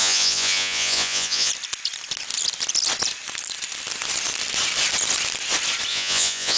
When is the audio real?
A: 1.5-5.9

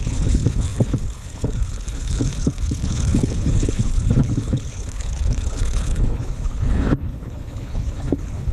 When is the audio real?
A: none